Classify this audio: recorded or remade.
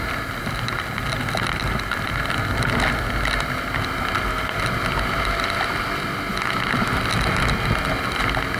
recorded